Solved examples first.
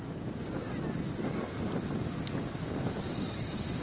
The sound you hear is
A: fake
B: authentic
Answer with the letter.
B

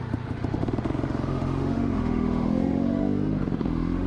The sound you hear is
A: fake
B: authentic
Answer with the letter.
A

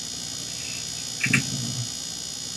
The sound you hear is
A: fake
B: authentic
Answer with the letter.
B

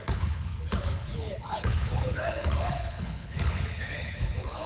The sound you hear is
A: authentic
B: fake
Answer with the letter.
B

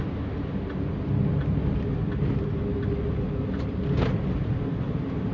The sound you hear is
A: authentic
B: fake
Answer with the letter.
A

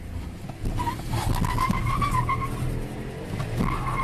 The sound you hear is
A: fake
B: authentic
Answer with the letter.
B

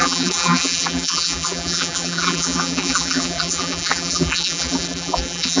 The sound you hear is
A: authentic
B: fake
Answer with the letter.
B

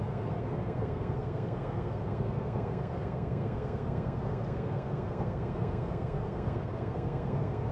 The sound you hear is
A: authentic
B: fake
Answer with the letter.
B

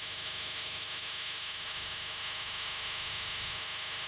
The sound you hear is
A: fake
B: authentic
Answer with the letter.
A